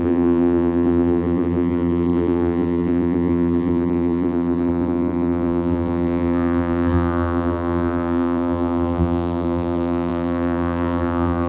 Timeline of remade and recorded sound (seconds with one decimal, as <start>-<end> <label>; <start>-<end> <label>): 0.0-11.5 remade